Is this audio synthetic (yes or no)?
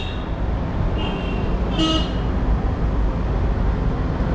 no